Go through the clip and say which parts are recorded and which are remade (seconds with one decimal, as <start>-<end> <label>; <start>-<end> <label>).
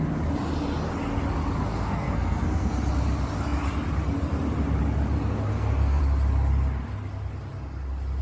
0.0-1.7 recorded; 1.7-2.7 remade; 2.7-5.5 recorded; 5.5-6.0 remade; 6.0-8.2 recorded